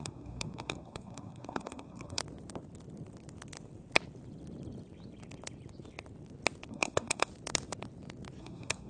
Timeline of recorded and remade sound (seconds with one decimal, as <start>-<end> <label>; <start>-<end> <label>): 0.0-2.2 remade; 2.2-6.7 recorded; 6.7-7.3 remade; 7.3-8.4 recorded; 8.4-8.9 remade